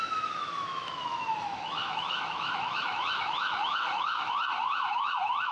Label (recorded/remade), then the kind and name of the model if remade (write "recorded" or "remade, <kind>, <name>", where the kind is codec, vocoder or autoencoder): remade, autoencoder, DAC-VAE